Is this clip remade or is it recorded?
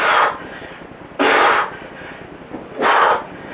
recorded